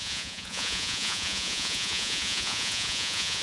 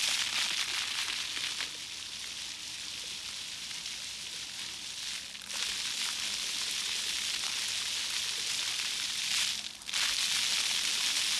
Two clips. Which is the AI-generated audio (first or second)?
first